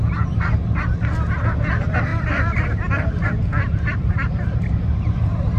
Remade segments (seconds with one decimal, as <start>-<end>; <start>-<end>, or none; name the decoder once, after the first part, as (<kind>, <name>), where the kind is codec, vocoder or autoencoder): 2.1-5.6 (vocoder, BigVGAN v2)